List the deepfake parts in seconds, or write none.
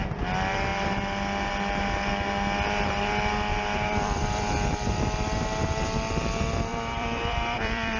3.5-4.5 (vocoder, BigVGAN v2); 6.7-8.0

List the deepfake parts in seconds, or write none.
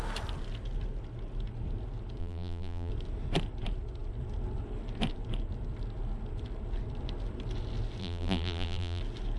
2.2-2.9 (vocoder, BigVGAN v2); 8.0-9.0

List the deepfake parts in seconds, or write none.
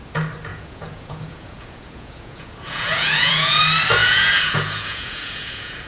0.5-3.6 (vocoder, Vocos); 4.0-5.9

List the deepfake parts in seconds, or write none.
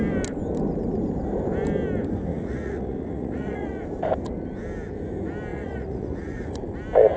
2.3-3.8 (vocoder, Vocos); 5.5-6.6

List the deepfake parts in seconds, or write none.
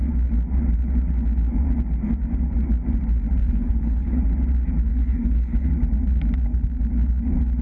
3.4-4.2 (codec, HILCodec); 4.9-5.7